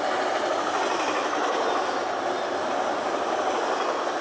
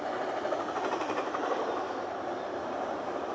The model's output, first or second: second